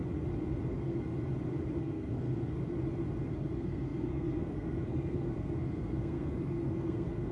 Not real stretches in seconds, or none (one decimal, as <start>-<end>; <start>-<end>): 0.7-1.1; 1.8-2.6; 3.3-7.3